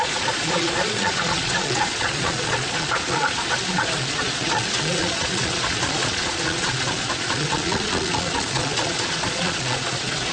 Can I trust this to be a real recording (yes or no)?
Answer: no